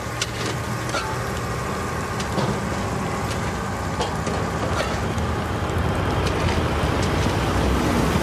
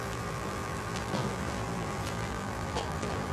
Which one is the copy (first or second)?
second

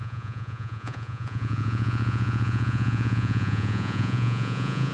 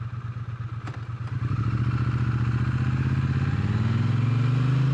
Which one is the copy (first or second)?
first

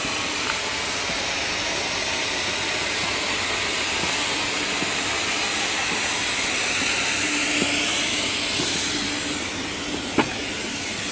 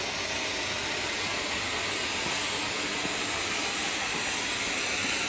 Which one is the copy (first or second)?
first